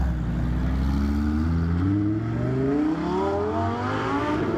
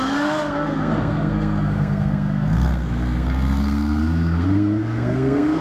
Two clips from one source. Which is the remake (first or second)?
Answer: second